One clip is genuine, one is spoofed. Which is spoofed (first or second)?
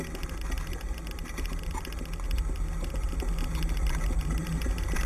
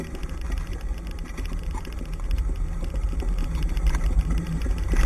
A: second